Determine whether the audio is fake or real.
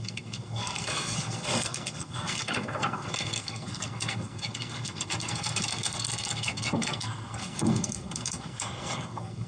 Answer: fake